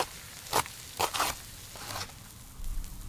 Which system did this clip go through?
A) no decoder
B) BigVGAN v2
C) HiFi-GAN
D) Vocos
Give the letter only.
A